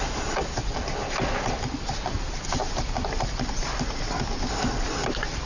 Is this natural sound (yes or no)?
yes